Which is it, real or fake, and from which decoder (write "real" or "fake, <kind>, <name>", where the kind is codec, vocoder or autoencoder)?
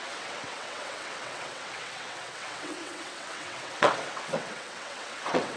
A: fake, vocoder, WaveNeXt